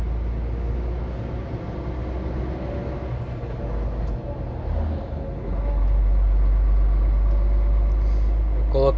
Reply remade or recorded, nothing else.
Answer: recorded